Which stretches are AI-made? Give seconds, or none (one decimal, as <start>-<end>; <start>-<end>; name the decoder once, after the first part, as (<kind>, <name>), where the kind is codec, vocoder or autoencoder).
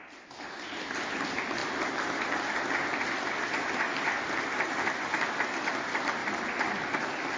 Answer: none